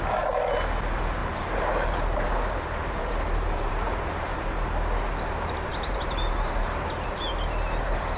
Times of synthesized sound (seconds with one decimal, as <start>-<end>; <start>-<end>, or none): 1.2-4.5; 5.7-7.3